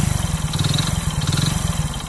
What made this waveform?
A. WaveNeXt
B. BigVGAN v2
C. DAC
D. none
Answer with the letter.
D